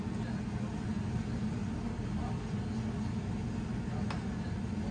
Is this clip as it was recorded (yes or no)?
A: yes